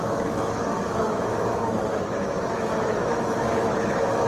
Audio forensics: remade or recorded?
remade